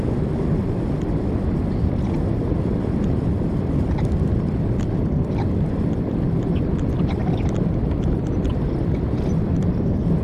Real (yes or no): yes